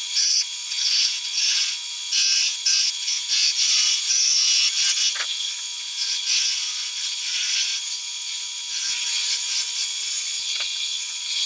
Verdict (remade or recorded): remade